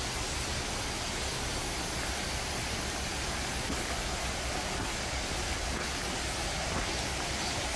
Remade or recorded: recorded